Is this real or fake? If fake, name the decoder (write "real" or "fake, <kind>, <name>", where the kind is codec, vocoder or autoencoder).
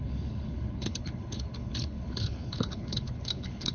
fake, codec, HILCodec